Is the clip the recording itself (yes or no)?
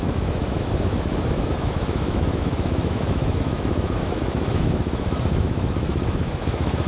no